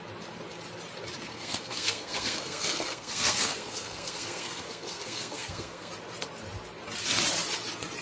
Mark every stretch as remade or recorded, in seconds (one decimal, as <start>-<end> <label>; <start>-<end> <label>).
0.0-1.3 recorded; 1.3-5.9 remade; 5.9-8.0 recorded